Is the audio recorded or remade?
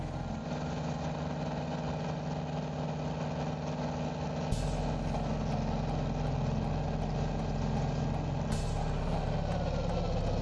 recorded